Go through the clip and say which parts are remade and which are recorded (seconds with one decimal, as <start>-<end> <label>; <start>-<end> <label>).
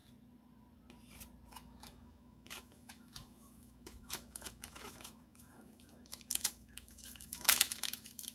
0.0-1.5 recorded; 1.5-8.3 remade